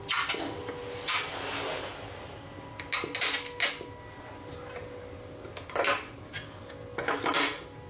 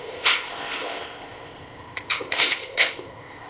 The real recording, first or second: first